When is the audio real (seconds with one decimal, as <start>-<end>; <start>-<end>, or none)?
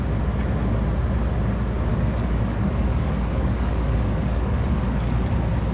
0.0-1.9; 5.3-5.7